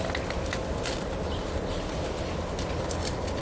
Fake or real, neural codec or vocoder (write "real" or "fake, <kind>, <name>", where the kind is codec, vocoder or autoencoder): real